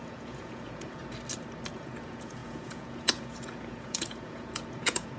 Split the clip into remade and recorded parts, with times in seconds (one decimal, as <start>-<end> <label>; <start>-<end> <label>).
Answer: 0.0-1.0 remade; 1.0-1.7 recorded; 1.7-5.2 remade